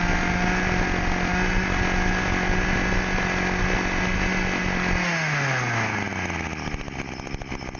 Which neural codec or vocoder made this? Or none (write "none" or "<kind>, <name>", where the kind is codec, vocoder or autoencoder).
none